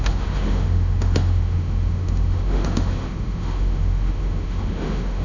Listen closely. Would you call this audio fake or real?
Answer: fake